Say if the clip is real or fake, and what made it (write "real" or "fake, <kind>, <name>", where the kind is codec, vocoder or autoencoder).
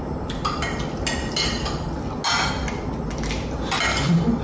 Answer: real